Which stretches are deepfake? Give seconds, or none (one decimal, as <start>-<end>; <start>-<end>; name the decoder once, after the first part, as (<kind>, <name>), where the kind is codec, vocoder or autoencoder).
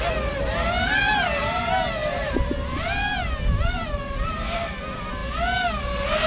none